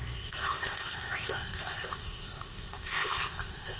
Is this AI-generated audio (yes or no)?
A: yes